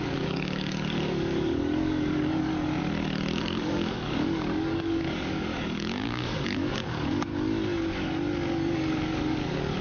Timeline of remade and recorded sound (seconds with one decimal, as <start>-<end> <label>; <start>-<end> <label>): 0.0-2.5 remade; 2.5-3.4 recorded; 3.4-7.3 remade; 7.3-8.5 recorded; 8.5-9.8 remade